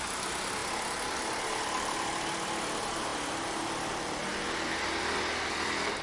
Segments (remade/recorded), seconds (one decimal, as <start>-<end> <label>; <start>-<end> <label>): 0.0-6.0 recorded